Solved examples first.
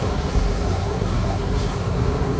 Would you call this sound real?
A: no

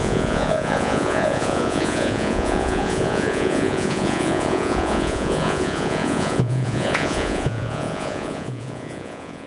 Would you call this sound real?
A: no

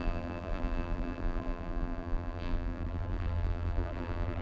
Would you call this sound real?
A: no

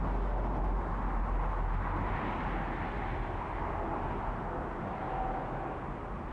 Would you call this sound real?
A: yes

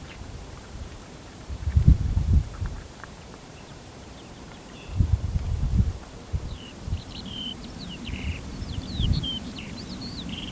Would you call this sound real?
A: no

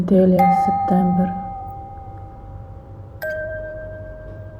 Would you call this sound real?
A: no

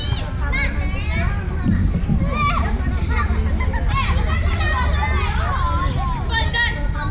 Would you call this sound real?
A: yes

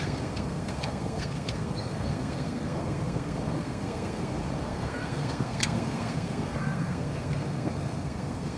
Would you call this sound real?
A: no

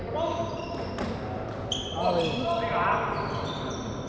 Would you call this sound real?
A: yes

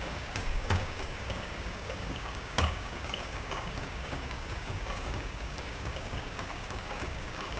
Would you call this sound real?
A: no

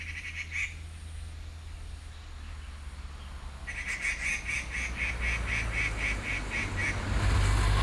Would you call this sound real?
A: yes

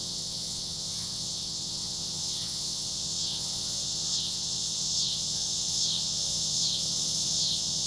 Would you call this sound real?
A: no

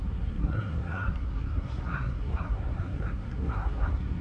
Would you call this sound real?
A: no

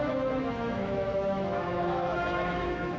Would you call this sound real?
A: no